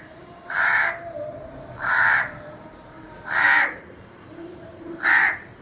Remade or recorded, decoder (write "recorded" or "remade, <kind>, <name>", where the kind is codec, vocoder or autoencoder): remade, vocoder, BigVGAN v2